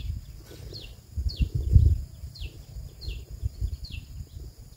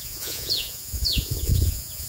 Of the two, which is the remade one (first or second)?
second